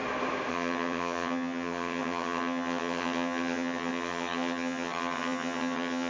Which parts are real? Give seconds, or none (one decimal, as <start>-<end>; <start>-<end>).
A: 0.0-0.5